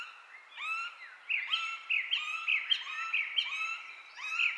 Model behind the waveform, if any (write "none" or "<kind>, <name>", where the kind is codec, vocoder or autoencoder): none